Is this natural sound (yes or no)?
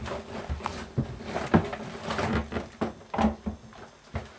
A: yes